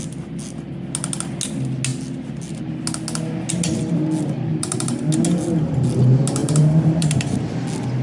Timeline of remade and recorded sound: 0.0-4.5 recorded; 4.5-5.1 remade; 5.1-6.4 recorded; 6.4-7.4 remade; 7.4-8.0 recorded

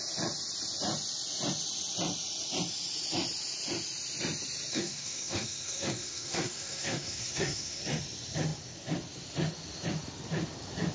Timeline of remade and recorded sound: 0.0-4.7 recorded; 4.7-7.8 remade; 7.8-10.9 recorded

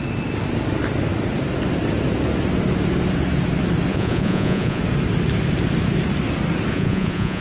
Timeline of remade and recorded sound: 0.0-3.9 recorded; 3.9-4.8 remade; 4.8-6.7 recorded; 6.7-7.4 remade